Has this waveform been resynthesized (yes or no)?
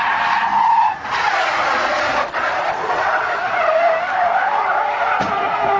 no